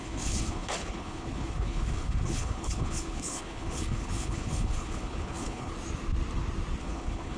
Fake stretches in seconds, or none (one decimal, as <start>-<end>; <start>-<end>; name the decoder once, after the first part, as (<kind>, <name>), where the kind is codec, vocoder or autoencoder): 0.0-5.7 (codec, HILCodec); 6.8-7.4